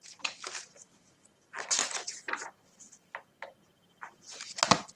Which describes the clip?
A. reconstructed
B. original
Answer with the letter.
B